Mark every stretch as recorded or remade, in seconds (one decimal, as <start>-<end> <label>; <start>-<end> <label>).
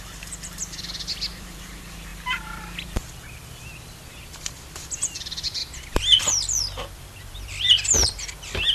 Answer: 0.0-5.6 remade; 5.6-6.2 recorded; 6.2-8.7 remade